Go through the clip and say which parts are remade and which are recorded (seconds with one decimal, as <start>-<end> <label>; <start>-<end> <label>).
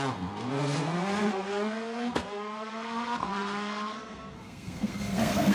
0.0-5.5 remade